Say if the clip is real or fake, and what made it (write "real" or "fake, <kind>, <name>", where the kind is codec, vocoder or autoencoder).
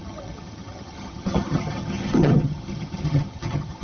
fake, vocoder, HiFi-GAN